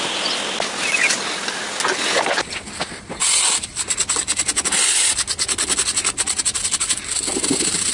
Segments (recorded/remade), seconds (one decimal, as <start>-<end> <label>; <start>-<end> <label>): 0.0-7.9 recorded